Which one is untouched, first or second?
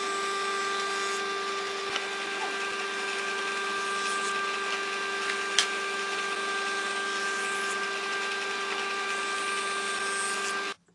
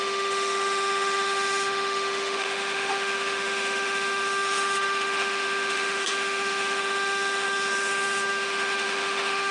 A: first